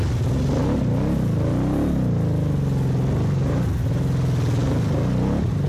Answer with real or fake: real